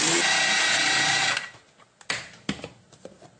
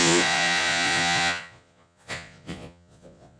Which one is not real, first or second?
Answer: second